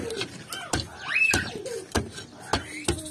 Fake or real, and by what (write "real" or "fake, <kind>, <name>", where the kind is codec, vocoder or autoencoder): real